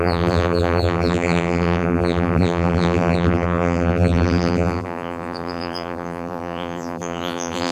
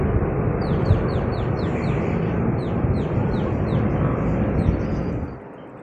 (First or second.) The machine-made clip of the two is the first